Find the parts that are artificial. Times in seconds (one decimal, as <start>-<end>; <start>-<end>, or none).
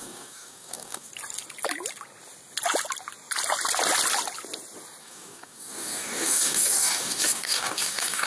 0.0-1.1; 5.0-8.3